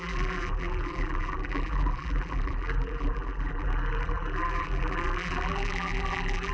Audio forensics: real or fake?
fake